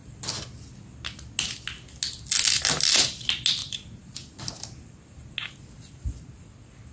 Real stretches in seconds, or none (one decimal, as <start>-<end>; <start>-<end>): 0.0-3.6; 4.4-6.9